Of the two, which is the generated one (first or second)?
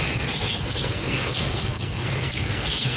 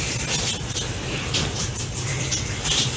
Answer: first